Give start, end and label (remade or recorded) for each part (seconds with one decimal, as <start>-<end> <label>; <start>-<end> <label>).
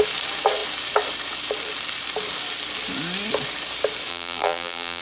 0.0-4.1 recorded; 4.1-5.0 remade